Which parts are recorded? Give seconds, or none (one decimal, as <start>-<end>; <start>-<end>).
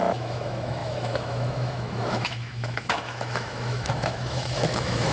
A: none